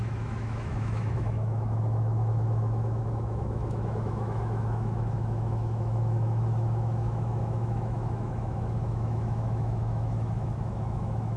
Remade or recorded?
remade